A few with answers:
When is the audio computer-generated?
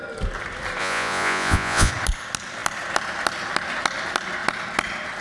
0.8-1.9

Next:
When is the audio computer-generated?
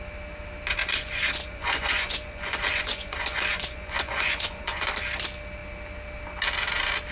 0.8-4.9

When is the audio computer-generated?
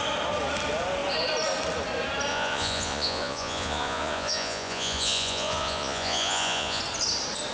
2.3-6.8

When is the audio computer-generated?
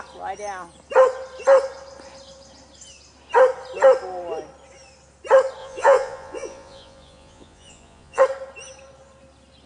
5.6-8.2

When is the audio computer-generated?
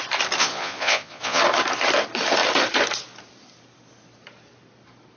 0.4-1.4